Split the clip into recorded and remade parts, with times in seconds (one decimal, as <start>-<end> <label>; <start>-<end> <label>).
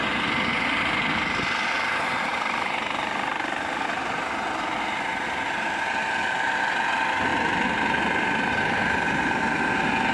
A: 0.0-10.1 recorded